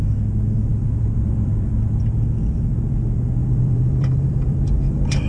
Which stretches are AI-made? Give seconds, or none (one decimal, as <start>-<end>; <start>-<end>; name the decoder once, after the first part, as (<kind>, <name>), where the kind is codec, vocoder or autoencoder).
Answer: 0.7-2.0 (vocoder, BigVGAN v2); 3.4-5.3